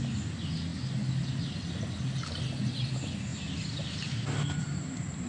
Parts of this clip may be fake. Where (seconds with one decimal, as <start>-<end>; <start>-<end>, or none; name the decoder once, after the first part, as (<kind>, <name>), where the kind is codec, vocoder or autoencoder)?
none